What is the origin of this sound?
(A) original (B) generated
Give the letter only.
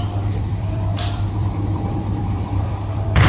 B